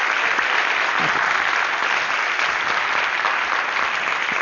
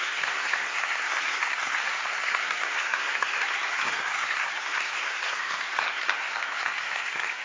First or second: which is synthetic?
second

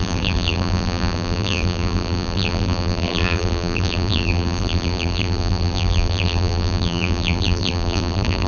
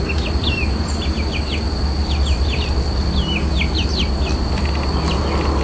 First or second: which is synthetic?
first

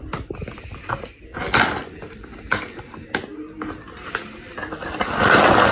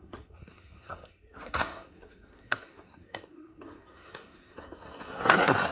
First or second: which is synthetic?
second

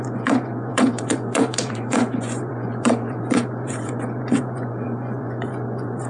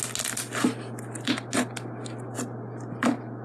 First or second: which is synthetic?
first